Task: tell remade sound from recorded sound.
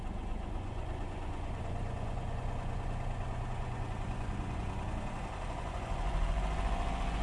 remade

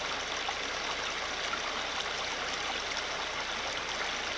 recorded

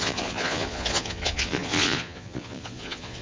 remade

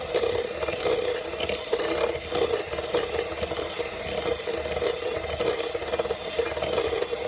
recorded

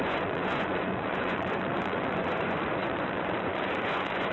remade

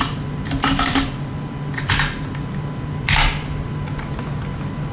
recorded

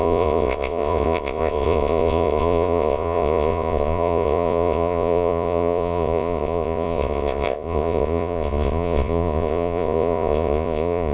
remade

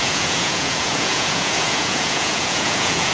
remade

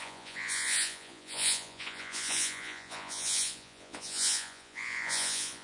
remade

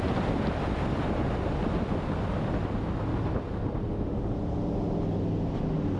recorded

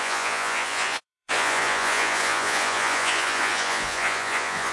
remade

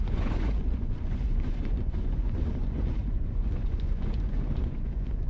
remade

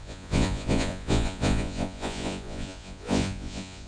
remade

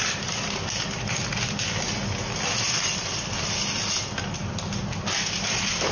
recorded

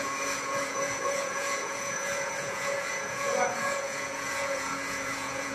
remade